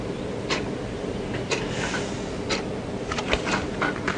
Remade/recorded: recorded